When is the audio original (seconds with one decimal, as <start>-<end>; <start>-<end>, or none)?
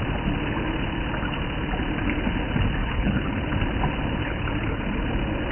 0.0-2.8; 3.5-4.2; 4.8-5.5